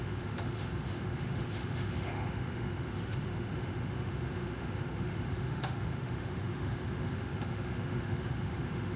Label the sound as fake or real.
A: fake